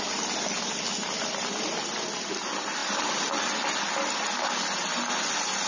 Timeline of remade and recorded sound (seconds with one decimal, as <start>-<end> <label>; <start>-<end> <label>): 0.0-5.7 recorded